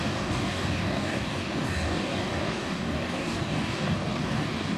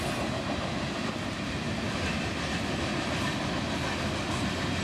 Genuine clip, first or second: second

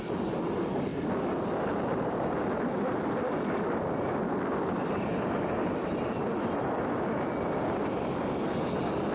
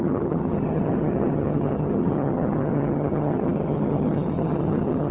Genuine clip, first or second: first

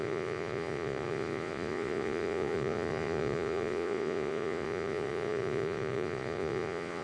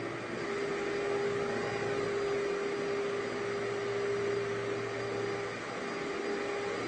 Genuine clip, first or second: second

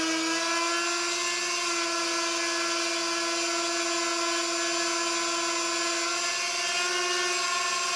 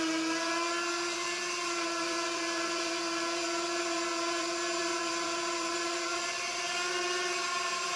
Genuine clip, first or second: first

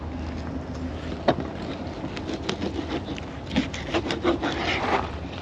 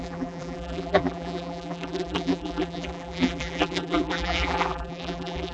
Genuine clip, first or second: first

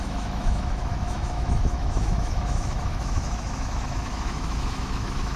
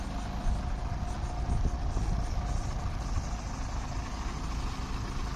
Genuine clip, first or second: second